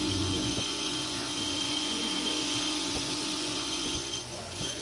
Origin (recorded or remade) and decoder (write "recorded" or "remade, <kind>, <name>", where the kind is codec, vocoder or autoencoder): remade, vocoder, Vocos